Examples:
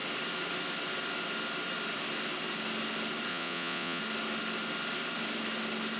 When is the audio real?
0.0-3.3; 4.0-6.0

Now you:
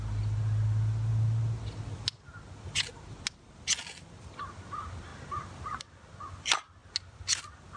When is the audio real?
0.0-7.8

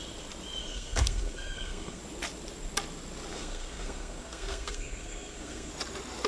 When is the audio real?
0.0-0.6; 2.0-3.3; 5.7-6.3

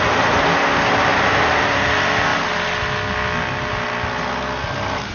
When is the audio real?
2.3-5.1

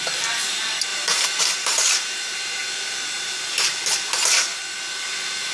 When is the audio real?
none

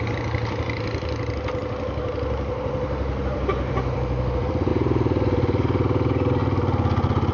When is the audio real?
0.0-7.3

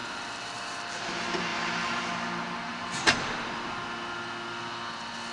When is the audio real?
1.1-1.5; 2.1-2.7; 3.8-5.3